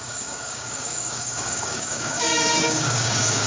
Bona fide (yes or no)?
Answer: no